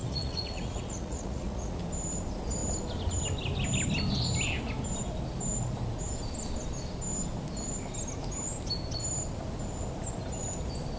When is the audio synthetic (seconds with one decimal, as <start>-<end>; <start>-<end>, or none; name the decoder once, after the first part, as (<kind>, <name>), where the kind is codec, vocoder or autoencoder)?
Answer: 0.0-1.8 (vocoder, Vocos)